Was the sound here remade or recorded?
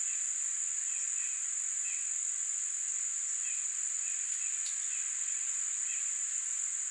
recorded